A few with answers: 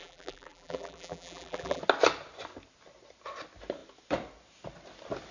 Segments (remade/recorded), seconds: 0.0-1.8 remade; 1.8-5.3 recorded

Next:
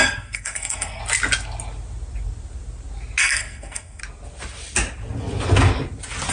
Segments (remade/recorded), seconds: 0.0-1.0 remade; 1.0-3.2 recorded; 3.2-4.0 remade; 4.0-6.3 recorded